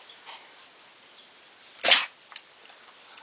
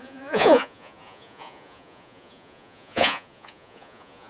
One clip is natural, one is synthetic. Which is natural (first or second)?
first